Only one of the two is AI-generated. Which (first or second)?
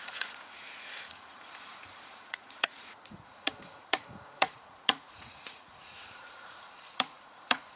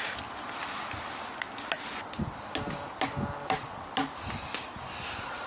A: first